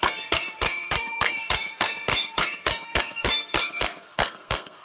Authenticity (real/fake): fake